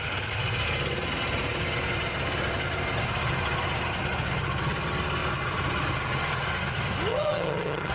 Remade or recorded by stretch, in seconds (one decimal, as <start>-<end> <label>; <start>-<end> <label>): 0.0-7.1 recorded; 7.1-7.9 remade